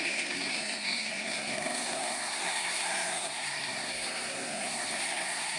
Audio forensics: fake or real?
fake